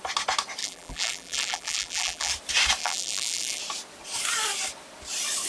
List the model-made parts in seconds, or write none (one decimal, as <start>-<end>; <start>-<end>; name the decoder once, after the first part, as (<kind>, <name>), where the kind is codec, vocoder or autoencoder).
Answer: 0.6-2.3 (vocoder, BigVGAN v2); 2.8-3.6